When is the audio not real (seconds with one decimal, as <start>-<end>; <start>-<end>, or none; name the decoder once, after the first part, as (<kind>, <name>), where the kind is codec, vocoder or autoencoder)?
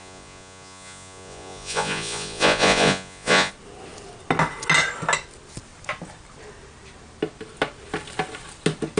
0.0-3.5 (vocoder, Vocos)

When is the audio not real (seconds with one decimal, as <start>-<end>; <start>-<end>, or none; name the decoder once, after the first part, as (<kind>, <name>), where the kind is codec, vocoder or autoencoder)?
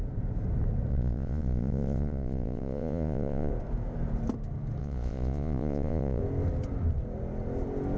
0.9-3.5 (vocoder, Vocos); 4.8-6.2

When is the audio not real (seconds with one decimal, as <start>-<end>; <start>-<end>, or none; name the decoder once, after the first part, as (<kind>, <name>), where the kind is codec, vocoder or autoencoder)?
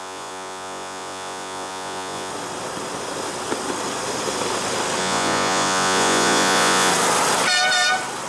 0.0-2.3 (vocoder, Vocos); 5.0-6.9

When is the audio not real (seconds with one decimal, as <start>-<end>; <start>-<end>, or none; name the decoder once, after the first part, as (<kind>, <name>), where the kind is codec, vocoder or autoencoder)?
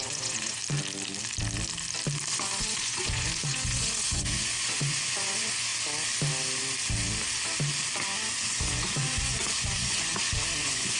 0.0-0.6 (vocoder, Vocos); 2.3-5.7; 8.3-10.1; 10.6-11.0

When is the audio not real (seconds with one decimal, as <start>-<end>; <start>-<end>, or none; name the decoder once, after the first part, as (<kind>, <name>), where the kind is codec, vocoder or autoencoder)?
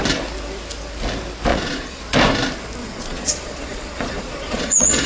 1.5-2.0 (vocoder, Vocos); 2.8-5.1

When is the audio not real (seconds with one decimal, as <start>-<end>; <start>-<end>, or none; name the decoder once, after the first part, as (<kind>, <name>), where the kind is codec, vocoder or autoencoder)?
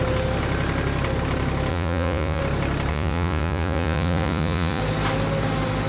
1.7-2.4 (vocoder, Vocos); 2.9-4.8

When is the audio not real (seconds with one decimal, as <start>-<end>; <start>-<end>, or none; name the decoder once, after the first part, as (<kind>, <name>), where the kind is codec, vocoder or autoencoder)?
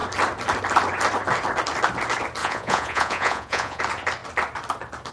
2.4-3.8 (vocoder, Vocos)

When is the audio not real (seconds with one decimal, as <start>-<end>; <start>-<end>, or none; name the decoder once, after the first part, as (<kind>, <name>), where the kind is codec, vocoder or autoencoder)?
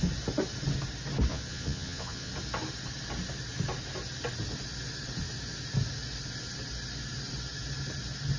1.3-2.3 (vocoder, Vocos)